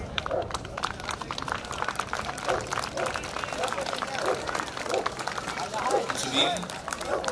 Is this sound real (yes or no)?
no